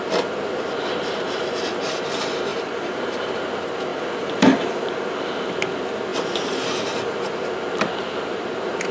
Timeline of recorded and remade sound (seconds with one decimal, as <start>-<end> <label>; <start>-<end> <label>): 0.0-2.5 recorded; 2.5-3.3 remade; 3.3-3.9 recorded; 3.9-5.5 remade; 5.5-8.9 recorded